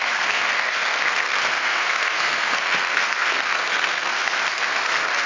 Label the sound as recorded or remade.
remade